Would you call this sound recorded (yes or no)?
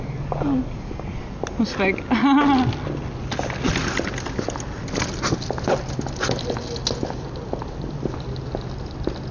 yes